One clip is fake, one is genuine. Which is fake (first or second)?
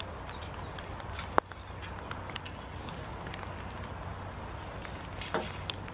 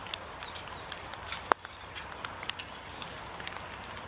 second